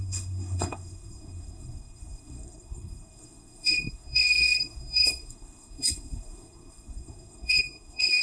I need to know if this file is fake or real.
fake